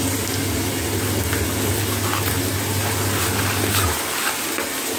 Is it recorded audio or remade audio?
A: recorded